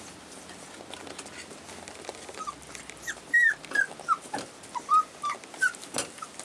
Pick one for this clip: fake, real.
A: real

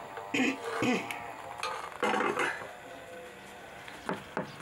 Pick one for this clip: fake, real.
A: real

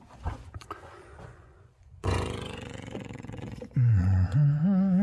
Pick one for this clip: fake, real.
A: fake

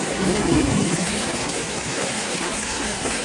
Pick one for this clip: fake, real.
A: fake